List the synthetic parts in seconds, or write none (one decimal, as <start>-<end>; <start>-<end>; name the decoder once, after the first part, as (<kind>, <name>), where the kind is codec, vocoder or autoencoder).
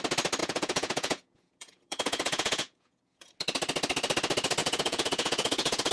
0.4-3.3 (vocoder, Vocos); 4.6-5.9